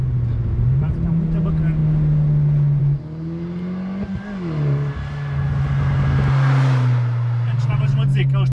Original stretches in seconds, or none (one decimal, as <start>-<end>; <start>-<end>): 0.0-8.5